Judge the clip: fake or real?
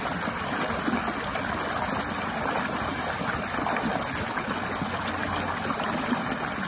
real